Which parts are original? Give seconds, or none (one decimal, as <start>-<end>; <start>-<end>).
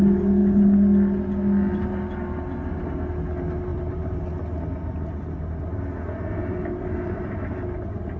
0.0-3.7; 4.2-6.4; 7.7-8.2